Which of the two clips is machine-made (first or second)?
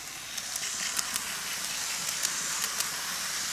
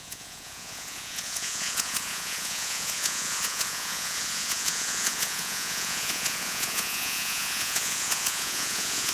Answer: second